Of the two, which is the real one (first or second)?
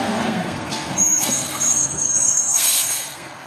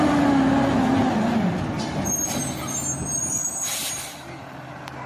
second